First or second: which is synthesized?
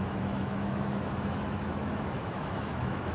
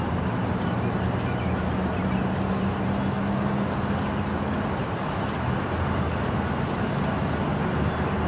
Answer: first